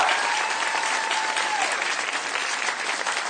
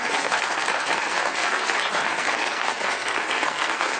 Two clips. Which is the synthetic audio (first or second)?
second